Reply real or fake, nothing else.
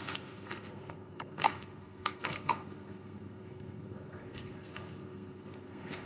fake